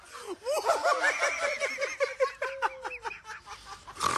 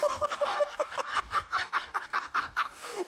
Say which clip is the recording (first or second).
first